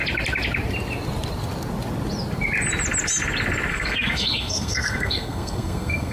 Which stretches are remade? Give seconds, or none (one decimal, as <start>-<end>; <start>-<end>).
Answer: 3.7-6.1

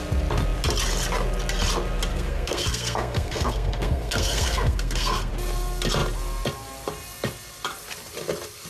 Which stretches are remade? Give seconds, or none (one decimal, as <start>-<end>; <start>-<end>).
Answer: 2.1-5.3